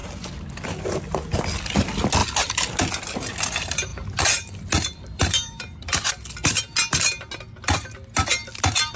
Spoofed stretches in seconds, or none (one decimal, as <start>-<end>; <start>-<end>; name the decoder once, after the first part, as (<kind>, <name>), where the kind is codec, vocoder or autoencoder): 3.9-6.1 (vocoder, BigVGAN v2)